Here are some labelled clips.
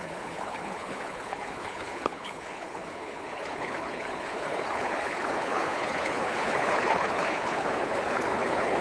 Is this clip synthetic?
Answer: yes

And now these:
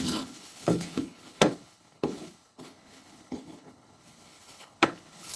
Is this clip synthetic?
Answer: yes